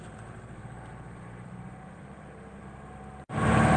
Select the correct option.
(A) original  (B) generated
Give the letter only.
B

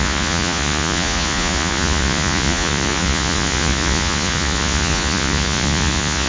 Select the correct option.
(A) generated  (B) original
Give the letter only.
A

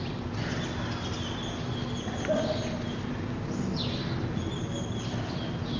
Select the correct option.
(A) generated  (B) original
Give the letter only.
B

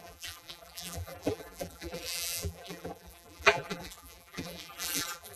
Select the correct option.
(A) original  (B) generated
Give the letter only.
B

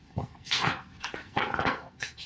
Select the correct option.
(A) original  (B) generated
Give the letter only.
B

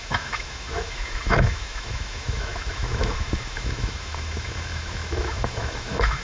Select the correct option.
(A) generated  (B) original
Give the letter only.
A